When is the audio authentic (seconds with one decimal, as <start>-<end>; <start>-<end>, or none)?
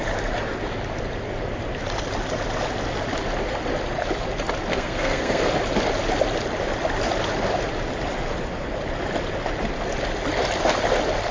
0.0-4.7; 5.4-11.3